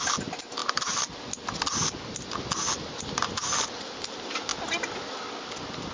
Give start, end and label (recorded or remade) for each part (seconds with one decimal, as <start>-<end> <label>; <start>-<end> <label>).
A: 0.0-5.9 recorded